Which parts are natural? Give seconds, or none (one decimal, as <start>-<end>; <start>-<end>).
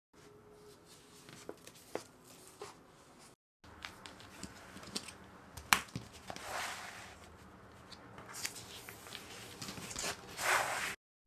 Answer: 0.0-1.3; 2.9-3.8; 4.8-11.3